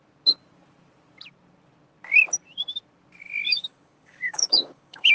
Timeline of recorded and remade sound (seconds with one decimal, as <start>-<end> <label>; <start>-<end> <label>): 0.0-3.5 recorded; 3.5-5.1 remade